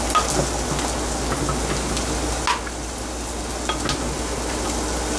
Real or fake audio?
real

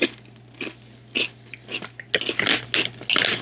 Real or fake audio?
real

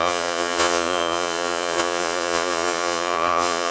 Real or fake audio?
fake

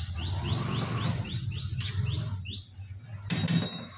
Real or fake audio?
real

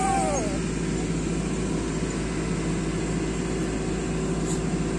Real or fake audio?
real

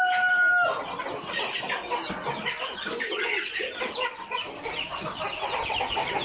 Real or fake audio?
real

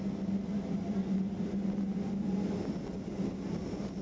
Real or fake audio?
real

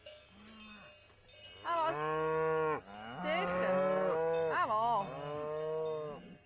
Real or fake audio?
real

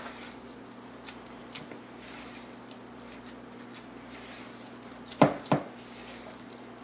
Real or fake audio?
real